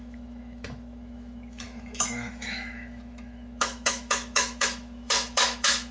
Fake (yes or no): yes